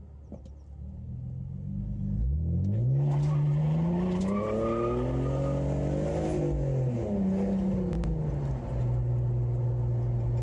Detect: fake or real real